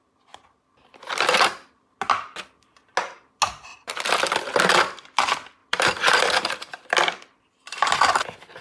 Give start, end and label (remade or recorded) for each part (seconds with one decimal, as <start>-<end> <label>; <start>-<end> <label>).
0.0-3.7 recorded; 3.7-4.6 remade; 4.6-5.6 recorded; 5.6-6.9 remade; 6.9-8.6 recorded